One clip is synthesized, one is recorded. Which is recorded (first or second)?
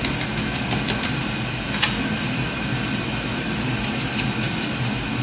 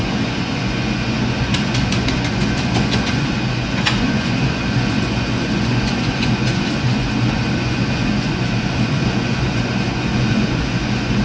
first